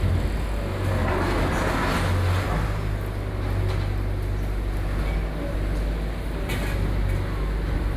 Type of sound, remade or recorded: recorded